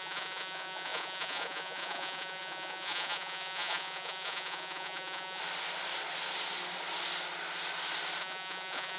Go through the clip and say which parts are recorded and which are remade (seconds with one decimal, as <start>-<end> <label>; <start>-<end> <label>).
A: 0.0-5.4 remade; 5.4-8.2 recorded; 8.2-9.0 remade